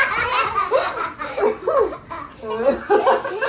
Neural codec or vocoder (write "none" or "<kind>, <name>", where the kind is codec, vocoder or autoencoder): none